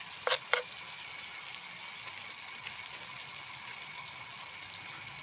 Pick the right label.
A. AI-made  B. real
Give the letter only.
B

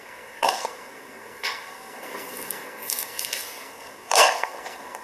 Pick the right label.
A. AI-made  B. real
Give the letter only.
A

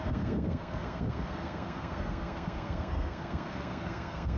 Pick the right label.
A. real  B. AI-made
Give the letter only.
B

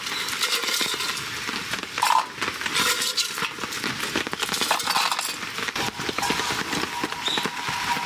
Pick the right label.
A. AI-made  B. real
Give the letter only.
B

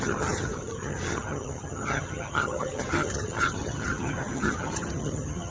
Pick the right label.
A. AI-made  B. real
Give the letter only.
A